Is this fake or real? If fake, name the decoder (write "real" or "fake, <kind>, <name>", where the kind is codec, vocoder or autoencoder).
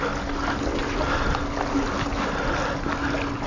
real